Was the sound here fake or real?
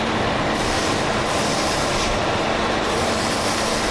fake